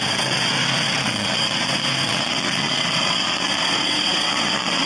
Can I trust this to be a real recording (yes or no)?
no